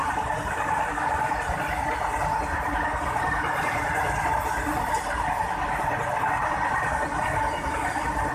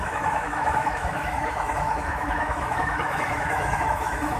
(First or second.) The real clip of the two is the first